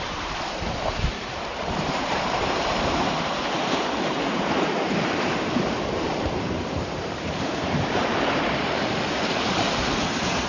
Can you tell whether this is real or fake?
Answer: fake